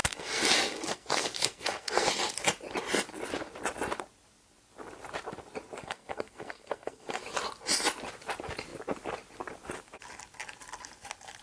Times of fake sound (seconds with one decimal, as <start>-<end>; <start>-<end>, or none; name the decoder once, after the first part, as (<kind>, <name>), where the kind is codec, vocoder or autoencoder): 0.0-2.1 (codec, SNAC); 5.8-7.2